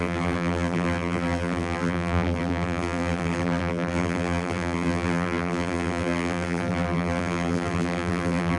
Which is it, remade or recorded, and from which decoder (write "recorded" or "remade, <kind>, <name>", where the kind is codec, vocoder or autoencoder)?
remade, vocoder, BigVGAN v2